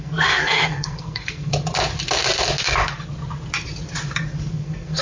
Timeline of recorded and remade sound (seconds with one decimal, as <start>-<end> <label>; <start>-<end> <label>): 0.0-1.5 remade; 1.5-4.5 recorded; 4.5-5.0 remade